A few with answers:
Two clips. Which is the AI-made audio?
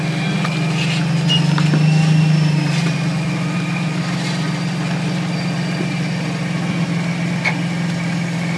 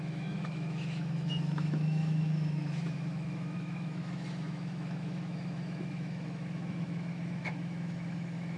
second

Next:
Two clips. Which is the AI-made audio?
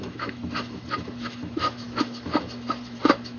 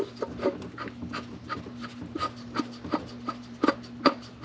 first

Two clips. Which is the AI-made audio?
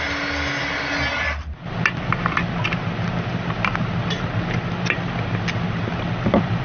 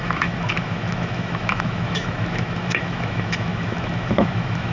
second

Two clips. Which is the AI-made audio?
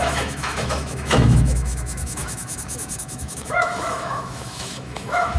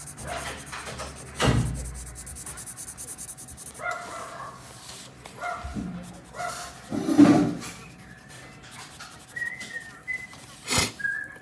first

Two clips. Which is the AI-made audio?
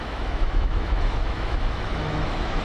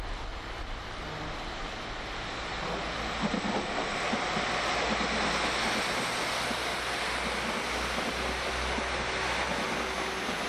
first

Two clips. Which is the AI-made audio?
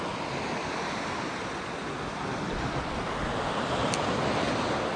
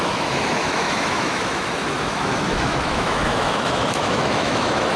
second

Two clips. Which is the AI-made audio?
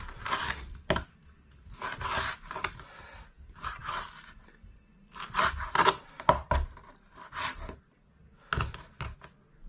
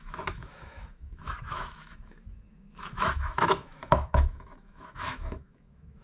second